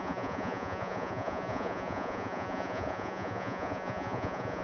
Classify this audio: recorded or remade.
remade